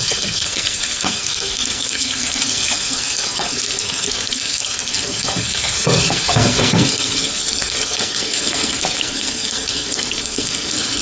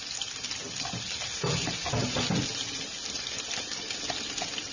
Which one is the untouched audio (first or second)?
second